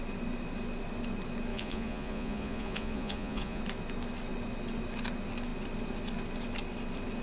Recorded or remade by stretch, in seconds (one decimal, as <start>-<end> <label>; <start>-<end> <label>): 0.0-1.5 recorded; 1.5-3.6 remade; 3.6-7.2 recorded